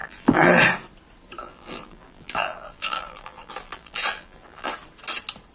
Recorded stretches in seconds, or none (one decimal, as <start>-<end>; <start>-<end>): 0.6-1.4; 4.7-5.5